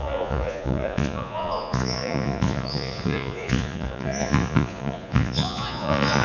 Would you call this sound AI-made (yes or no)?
yes